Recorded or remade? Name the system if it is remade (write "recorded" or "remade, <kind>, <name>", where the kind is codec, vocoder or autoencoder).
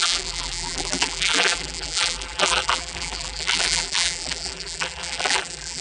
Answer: remade, vocoder, BigVGAN v2